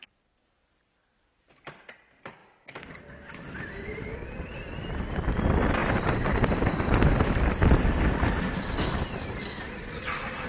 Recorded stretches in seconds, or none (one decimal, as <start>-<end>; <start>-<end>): 4.5-5.1